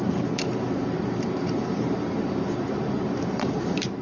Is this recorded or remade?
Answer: remade